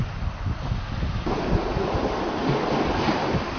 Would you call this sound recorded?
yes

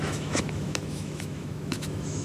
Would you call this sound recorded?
no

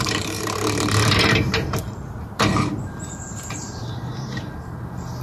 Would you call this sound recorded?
no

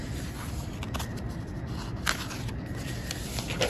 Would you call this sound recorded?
yes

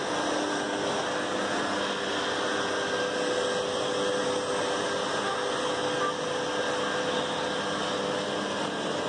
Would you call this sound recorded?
yes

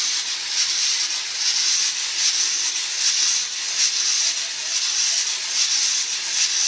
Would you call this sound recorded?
yes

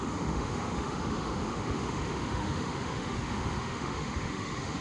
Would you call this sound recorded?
no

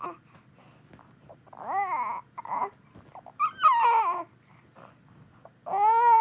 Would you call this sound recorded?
yes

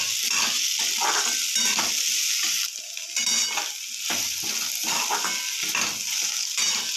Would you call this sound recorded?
yes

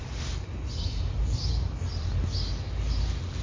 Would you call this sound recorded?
yes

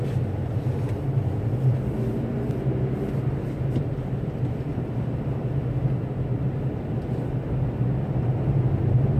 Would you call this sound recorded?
yes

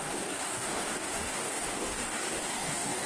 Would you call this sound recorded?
no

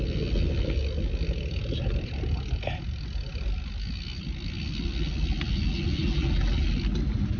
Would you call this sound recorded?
yes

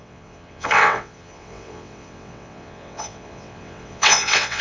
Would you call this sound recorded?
no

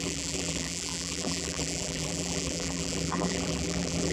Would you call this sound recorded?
no